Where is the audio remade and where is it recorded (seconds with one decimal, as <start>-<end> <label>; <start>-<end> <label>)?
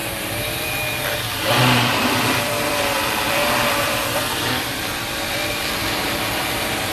0.0-6.9 remade